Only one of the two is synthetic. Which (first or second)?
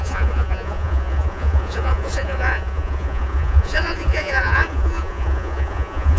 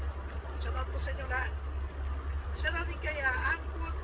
first